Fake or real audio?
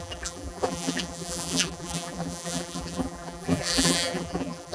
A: fake